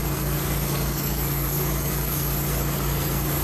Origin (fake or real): fake